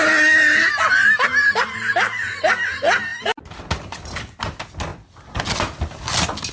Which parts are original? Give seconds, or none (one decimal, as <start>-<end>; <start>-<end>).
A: 0.0-6.5